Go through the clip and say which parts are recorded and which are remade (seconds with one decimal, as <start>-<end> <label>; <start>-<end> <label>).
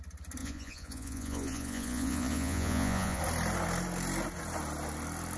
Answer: 0.0-0.4 recorded; 0.4-3.2 remade; 3.2-5.4 recorded